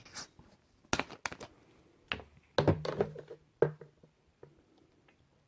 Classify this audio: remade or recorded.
recorded